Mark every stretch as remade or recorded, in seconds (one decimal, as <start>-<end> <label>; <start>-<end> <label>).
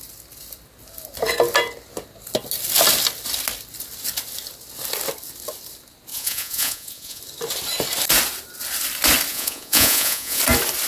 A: 0.0-6.1 recorded; 6.1-7.2 remade; 7.2-9.3 recorded; 9.3-10.4 remade; 10.4-10.9 recorded